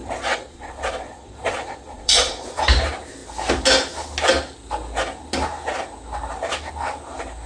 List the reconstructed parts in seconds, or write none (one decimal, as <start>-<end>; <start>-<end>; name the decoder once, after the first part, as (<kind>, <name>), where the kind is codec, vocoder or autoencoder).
0.0-2.6 (vocoder, Vocos)